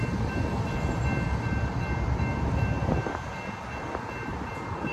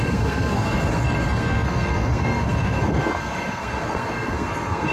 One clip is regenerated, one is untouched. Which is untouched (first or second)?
first